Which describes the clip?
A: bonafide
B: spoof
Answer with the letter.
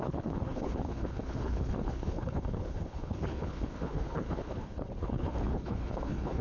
B